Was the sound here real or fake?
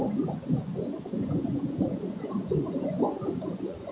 fake